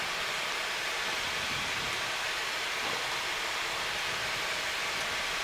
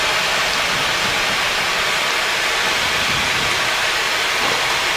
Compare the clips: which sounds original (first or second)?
second